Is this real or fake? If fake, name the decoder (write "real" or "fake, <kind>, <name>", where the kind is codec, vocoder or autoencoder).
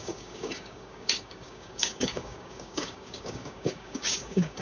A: fake, codec, DAC